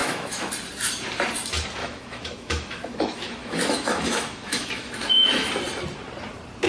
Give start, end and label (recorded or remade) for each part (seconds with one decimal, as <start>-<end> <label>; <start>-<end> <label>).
0.0-0.5 remade; 0.5-1.8 recorded; 1.8-5.5 remade; 5.5-6.7 recorded